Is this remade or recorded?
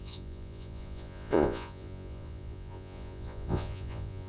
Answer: remade